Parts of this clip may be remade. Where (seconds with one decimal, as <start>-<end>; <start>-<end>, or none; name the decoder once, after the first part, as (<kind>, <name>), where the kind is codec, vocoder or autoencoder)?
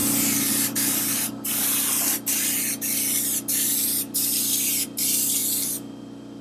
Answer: 0.0-2.0 (vocoder, BigVGAN v2); 5.4-6.4